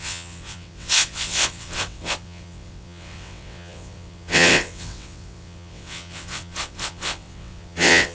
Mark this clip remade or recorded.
remade